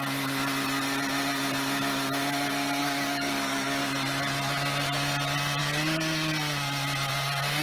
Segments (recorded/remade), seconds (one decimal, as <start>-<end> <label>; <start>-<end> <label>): 0.0-2.8 recorded; 2.8-3.8 remade; 3.8-5.6 recorded; 5.6-6.3 remade; 6.3-7.6 recorded